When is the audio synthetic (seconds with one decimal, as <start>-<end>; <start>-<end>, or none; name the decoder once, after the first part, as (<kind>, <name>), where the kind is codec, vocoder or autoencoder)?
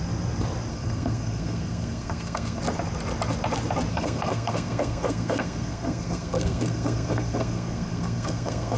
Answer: 0.7-2.6 (codec, SNAC); 3.9-8.8